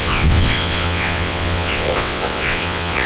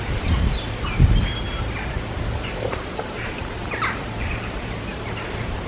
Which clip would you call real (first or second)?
second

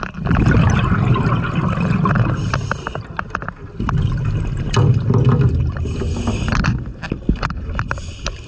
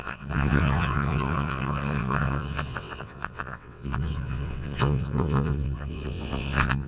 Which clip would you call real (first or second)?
first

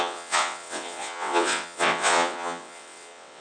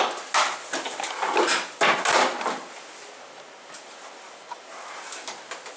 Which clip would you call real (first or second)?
second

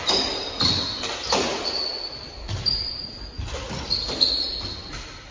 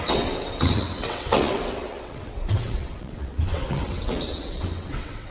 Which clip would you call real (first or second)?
first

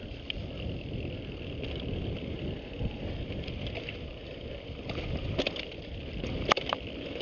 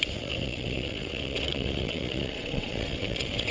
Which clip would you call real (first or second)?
first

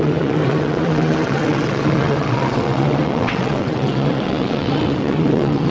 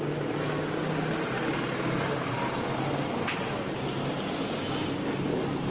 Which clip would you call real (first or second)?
second